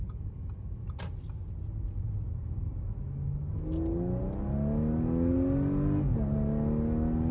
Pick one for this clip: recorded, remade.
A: recorded